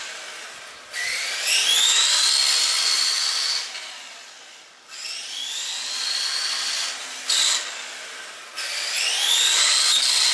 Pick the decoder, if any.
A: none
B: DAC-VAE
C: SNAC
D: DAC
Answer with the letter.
A